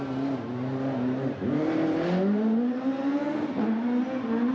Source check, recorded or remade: recorded